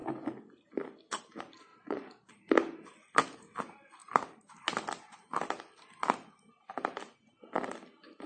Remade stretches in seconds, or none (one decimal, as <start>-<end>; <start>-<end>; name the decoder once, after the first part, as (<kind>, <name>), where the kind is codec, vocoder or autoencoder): 1.7-2.3 (vocoder, Vocos)